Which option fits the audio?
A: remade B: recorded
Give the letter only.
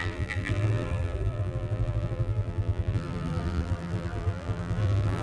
A